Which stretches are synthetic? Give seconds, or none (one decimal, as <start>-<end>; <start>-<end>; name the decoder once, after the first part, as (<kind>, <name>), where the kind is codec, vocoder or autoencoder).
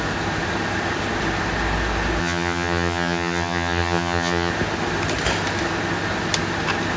2.2-4.5 (vocoder, HiFi-GAN)